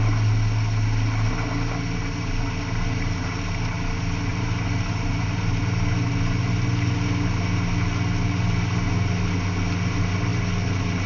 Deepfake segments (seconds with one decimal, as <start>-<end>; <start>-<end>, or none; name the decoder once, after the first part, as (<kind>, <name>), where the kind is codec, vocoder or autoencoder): 4.3-6.9 (vocoder, BigVGAN v2)